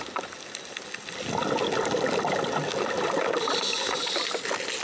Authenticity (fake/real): real